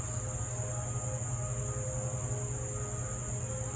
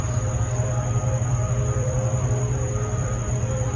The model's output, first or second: second